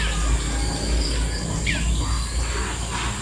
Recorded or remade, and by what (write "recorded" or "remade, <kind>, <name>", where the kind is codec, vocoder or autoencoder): recorded